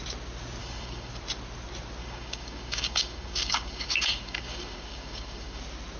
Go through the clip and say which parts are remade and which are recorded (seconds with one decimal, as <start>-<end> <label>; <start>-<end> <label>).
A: 0.0-0.6 recorded; 0.6-1.1 remade; 1.1-2.0 recorded; 2.0-5.6 remade; 5.6-6.0 recorded